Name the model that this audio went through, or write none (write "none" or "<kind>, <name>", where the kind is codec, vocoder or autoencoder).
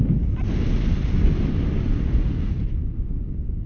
none